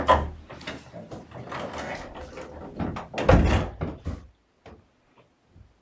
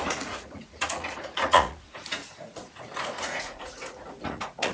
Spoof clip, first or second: second